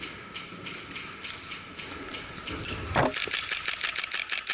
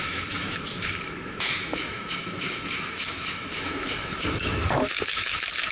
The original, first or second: first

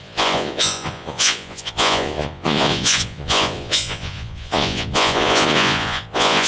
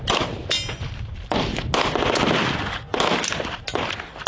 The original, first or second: second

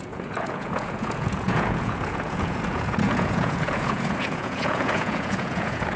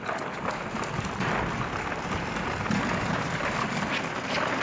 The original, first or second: second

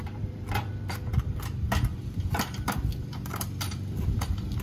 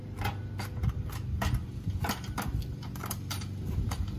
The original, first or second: second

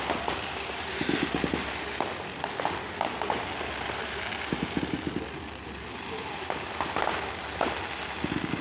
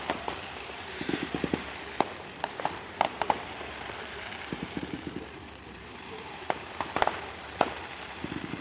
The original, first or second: first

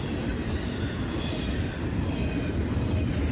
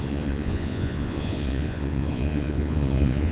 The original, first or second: first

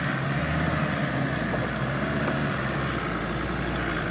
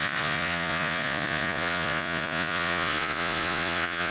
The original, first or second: first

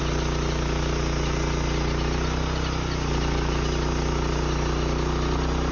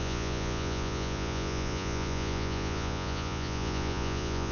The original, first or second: first